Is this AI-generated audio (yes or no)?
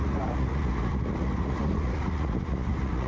yes